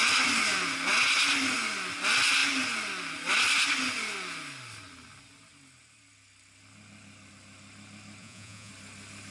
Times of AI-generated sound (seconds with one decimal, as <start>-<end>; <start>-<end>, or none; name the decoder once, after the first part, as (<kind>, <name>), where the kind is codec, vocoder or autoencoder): 8.2-8.7 (vocoder, Vocos)